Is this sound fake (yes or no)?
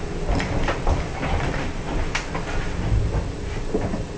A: no